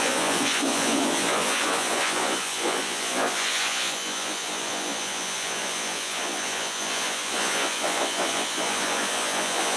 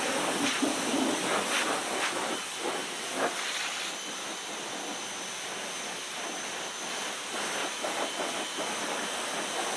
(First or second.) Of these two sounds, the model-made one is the first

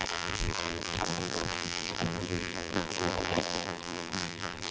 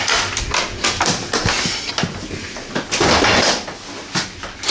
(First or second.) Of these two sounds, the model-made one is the first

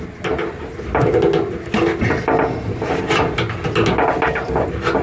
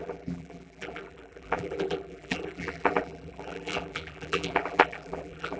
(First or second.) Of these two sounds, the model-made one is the second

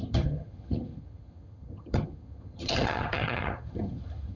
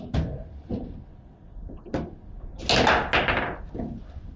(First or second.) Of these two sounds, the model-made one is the first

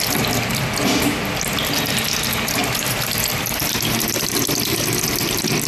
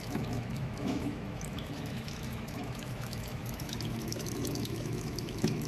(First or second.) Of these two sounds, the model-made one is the second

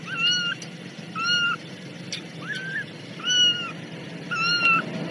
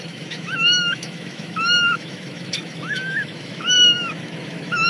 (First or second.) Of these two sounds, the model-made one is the second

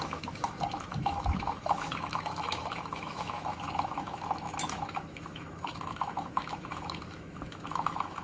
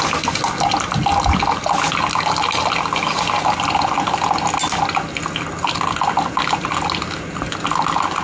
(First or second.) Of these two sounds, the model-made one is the first